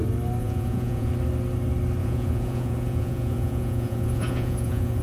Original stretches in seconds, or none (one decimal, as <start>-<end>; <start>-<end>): 0.0-0.4; 1.1-2.0